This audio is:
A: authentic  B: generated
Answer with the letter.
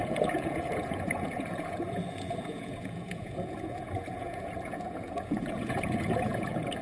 B